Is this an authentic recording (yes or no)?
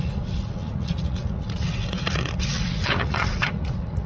no